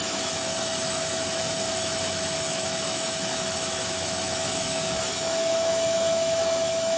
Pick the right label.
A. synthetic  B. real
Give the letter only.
A